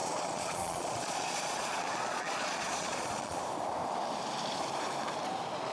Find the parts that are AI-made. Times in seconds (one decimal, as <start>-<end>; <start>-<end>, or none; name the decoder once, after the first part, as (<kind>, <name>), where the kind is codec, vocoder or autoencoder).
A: 0.0-3.4 (vocoder, Vocos)